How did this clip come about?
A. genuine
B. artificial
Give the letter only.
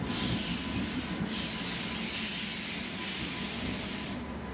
A